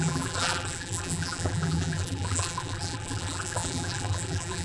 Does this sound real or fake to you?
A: fake